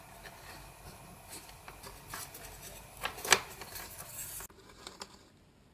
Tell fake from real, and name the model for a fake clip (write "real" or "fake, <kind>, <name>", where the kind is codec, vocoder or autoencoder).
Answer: real